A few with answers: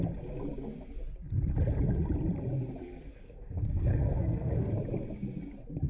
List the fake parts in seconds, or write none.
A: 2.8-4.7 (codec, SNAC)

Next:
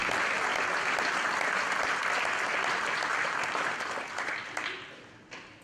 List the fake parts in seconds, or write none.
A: none

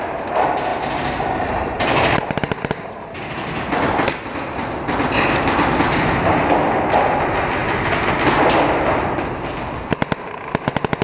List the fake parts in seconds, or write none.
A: 0.7-3.0 (vocoder, BigVGAN v2)

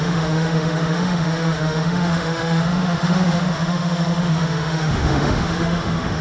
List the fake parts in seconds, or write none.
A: 0.0-6.2 (autoencoder, DAC-VAE)

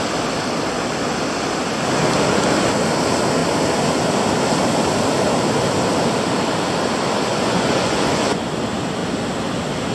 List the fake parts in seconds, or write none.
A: 7.3-8.4 (vocoder, Vocos)